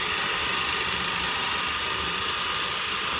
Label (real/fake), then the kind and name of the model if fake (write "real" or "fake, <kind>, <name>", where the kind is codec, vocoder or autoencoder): fake, vocoder, BigVGAN v2